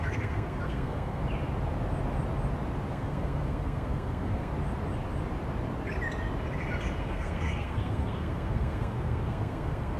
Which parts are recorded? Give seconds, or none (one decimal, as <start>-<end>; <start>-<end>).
1.2-2.9; 4.5-7.0